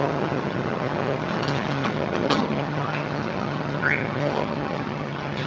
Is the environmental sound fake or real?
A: fake